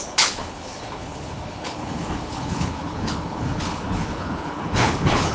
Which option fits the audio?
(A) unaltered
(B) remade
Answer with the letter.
B